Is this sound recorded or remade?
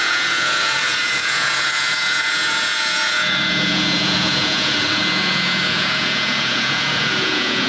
remade